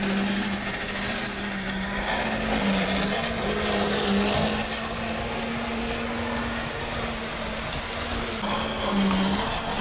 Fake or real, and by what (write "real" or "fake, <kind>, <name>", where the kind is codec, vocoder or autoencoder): real